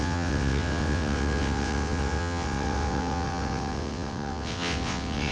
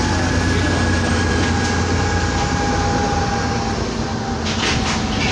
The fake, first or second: first